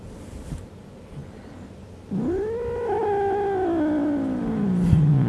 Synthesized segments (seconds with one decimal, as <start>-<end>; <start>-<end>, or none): none